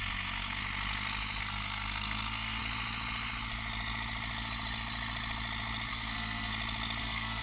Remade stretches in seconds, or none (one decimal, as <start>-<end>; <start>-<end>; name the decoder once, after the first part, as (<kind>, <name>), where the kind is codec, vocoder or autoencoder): 0.0-0.6 (codec, SNAC); 1.4-2.6; 5.9-6.5; 7.0-7.4